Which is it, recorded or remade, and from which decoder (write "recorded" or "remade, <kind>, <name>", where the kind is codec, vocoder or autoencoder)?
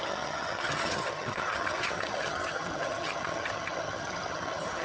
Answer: remade, vocoder, HiFi-GAN